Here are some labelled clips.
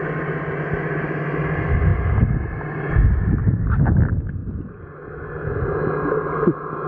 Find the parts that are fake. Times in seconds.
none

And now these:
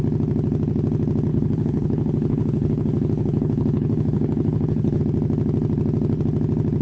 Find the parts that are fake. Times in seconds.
1.3-5.0

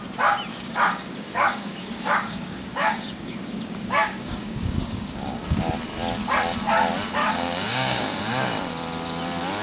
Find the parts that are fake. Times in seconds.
0.5-5.7; 7.2-8.2

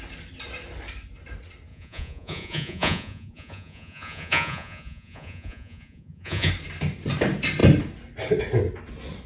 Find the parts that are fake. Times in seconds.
1.7-6.5

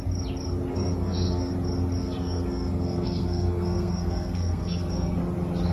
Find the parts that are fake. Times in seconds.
0.7-1.5; 2.0-5.2

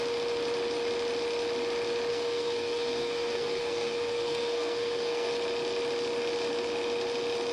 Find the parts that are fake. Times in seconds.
2.1-5.3

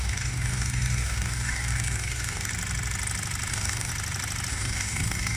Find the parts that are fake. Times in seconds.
0.0-2.5; 3.5-3.9; 4.5-5.4